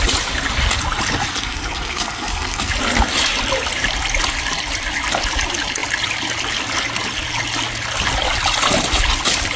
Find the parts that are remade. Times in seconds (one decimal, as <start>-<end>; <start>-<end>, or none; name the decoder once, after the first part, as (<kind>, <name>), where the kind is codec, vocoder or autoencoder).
1.3-2.7 (codec, SNAC)